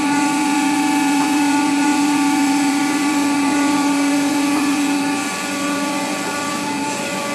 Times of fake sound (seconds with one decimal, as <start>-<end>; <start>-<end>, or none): 0.0-7.3